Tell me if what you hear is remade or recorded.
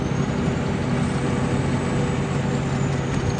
recorded